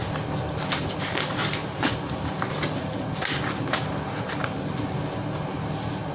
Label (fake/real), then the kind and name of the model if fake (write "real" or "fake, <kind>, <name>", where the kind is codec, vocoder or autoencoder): real